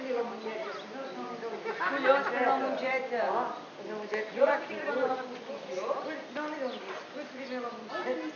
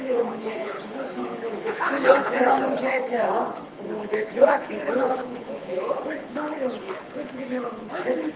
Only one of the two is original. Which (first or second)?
first